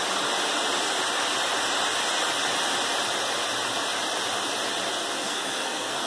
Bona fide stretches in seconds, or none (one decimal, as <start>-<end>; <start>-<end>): 0.0-5.2